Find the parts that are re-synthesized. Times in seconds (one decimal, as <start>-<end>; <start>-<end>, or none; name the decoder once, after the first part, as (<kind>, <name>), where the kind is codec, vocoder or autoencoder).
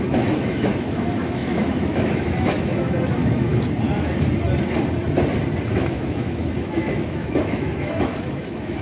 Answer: 0.0-3.5 (autoencoder, DAC-VAE); 5.7-8.8